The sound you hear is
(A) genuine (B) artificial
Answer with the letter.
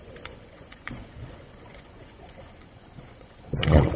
B